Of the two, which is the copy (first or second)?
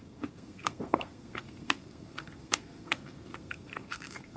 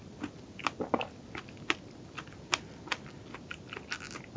first